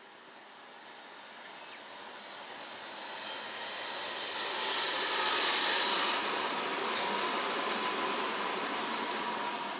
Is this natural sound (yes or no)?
yes